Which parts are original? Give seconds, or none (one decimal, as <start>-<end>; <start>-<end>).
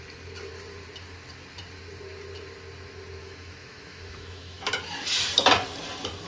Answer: 0.0-3.2; 4.7-6.3